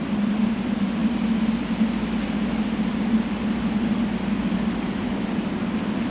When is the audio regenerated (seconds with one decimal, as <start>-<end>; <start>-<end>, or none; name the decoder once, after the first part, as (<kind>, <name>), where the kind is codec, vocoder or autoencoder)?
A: none